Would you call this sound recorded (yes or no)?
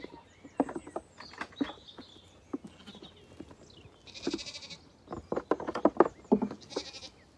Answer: yes